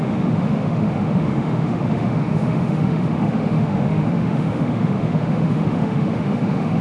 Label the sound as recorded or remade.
remade